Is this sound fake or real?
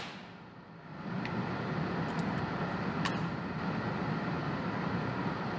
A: fake